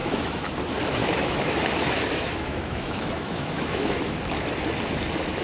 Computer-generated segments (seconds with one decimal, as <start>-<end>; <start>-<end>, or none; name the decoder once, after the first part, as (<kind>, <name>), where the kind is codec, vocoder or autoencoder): 0.0-0.5 (autoencoder, DAC-VAE); 1.0-4.2